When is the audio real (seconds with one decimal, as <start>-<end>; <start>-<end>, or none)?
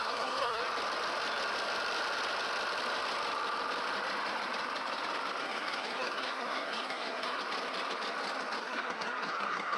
0.6-5.4; 7.4-8.6